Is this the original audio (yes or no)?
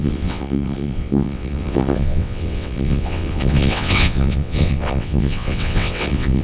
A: no